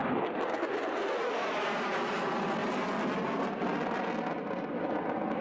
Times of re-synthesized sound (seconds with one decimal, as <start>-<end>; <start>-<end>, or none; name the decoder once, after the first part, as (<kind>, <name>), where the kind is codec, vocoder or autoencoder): none

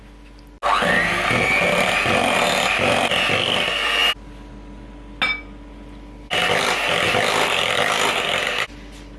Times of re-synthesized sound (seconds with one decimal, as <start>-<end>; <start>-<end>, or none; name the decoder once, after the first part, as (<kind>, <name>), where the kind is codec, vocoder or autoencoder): none

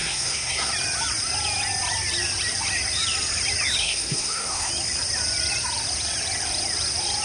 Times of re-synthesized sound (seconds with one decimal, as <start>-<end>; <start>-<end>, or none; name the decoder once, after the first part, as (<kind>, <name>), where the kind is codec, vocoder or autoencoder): 0.0-0.7 (codec, SNAC); 3.8-4.7

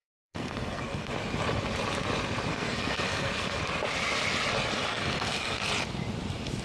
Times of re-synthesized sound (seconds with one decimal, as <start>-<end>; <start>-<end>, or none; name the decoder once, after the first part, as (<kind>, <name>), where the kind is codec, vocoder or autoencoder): 0.0-1.1 (codec, SNAC); 2.5-3.6; 4.9-5.7